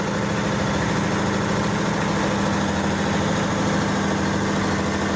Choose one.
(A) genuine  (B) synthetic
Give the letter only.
A